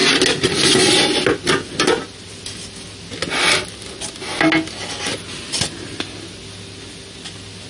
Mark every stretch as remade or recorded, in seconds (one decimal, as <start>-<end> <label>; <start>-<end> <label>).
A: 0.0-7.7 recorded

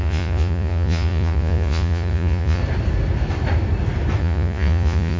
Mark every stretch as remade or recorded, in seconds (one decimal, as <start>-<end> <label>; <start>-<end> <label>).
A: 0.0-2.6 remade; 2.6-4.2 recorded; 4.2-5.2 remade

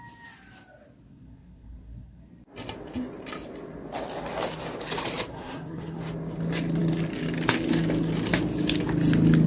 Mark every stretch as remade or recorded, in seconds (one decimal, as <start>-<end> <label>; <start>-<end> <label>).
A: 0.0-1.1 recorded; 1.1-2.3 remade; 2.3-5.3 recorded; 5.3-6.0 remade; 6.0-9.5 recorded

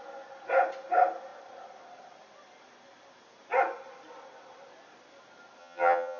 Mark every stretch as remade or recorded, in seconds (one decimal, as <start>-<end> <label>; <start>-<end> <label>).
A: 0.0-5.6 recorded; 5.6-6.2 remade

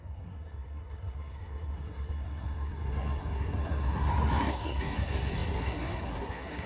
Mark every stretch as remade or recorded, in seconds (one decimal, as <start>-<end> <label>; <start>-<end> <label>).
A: 0.0-6.7 remade